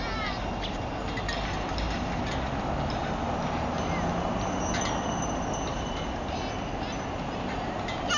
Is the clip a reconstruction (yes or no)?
no